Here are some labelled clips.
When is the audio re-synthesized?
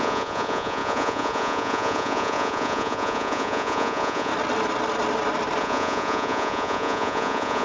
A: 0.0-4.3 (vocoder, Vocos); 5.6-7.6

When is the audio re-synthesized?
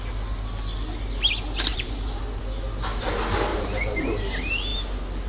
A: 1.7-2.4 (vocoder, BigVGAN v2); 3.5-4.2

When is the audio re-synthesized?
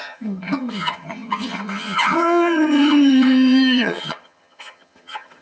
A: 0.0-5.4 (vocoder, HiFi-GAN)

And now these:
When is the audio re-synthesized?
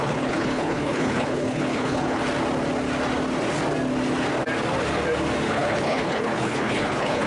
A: 0.0-2.2 (codec, HILCodec); 5.5-7.3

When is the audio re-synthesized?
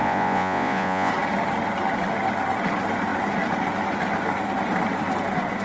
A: 0.0-1.1 (vocoder, Vocos)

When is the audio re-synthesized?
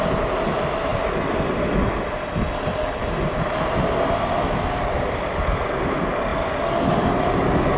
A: none